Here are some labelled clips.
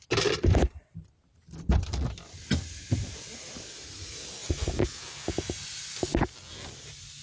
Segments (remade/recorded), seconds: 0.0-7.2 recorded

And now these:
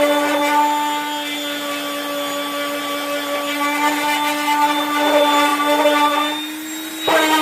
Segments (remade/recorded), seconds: 0.0-7.4 recorded

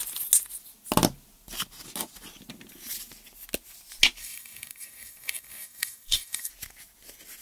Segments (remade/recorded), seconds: 0.0-4.2 recorded; 4.2-6.5 remade; 6.5-7.4 recorded